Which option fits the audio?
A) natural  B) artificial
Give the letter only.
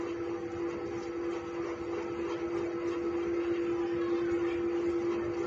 A